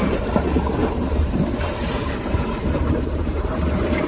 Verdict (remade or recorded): remade